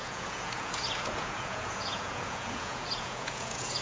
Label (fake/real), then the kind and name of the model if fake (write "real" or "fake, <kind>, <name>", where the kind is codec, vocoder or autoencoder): fake, vocoder, Vocos